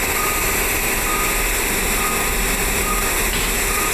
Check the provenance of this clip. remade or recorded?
recorded